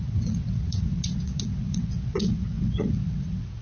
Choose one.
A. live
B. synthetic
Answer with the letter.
B